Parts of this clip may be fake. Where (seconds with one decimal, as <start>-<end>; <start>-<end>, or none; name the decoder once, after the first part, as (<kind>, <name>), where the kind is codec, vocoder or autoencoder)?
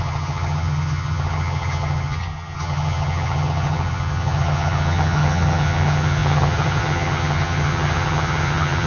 0.0-8.9 (vocoder, HiFi-GAN)